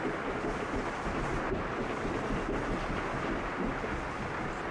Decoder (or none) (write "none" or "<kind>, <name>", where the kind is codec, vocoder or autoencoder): none